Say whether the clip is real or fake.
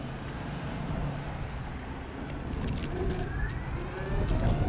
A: real